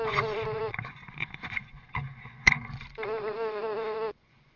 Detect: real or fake fake